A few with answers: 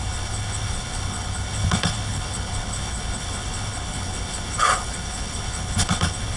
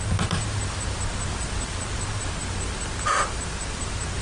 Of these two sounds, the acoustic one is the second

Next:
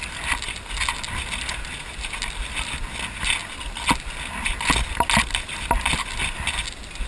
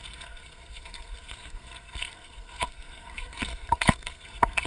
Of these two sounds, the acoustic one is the first